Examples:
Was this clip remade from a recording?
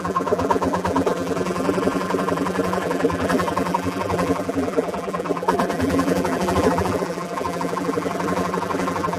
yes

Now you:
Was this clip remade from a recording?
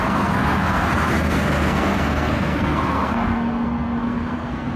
yes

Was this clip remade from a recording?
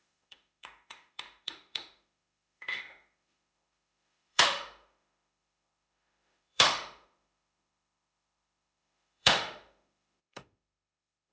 yes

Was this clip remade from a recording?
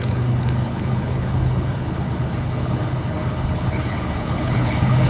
yes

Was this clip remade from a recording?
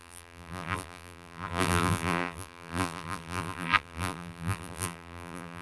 yes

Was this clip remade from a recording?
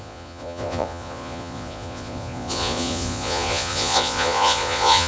yes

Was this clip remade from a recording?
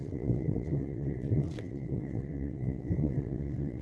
yes